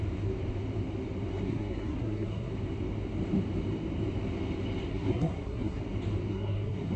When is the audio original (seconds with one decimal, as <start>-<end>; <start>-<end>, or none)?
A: 0.0-1.3; 2.5-4.9; 5.8-6.3